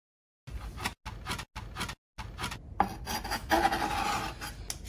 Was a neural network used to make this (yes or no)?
no